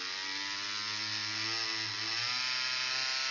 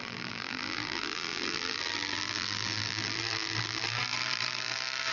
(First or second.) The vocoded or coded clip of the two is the second